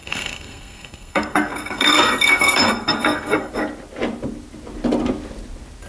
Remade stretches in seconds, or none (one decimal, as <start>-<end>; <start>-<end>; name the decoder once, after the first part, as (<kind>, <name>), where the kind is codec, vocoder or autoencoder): 0.0-3.5 (codec, SNAC)